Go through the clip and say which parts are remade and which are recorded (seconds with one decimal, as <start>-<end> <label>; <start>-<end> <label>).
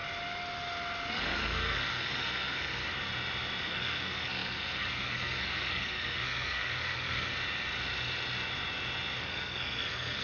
0.0-1.2 recorded; 1.2-2.8 remade; 2.8-3.6 recorded; 3.6-7.3 remade; 7.3-9.2 recorded; 9.2-10.2 remade